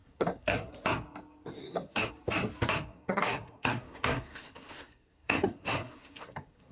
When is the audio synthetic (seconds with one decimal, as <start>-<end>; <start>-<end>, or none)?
0.0-0.7; 1.6-2.1; 2.9-6.7